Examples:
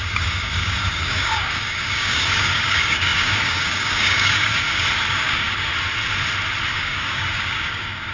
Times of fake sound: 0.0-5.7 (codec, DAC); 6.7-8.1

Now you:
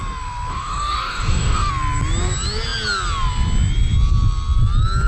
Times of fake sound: 0.5-1.7 (codec, DAC)

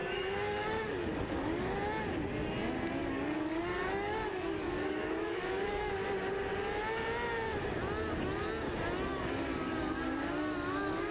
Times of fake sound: 0.0-1.8 (codec, DAC); 3.0-6.0; 9.1-11.1

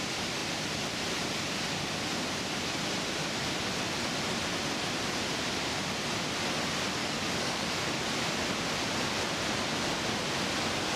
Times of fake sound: 7.0-7.9 (codec, DAC)

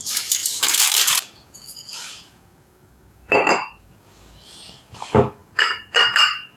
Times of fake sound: 0.0-6.6 (codec, DAC)

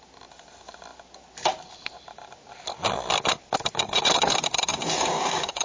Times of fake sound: 4.7-5.6 (codec, DAC)